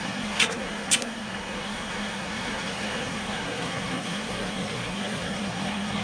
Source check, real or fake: fake